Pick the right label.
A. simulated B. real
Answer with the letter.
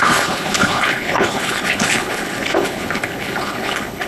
A